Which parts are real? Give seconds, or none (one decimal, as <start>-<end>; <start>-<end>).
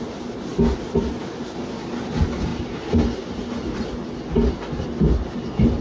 0.0-5.8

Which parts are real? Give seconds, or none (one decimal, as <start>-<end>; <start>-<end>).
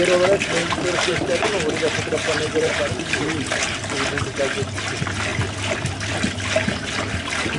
0.0-0.6; 4.4-7.6